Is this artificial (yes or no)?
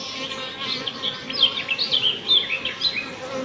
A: no